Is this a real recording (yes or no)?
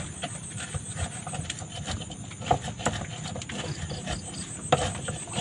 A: yes